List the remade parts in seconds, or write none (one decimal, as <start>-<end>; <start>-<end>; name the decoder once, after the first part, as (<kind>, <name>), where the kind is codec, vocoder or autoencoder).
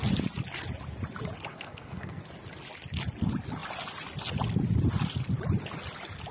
1.5-2.2 (codec, SNAC)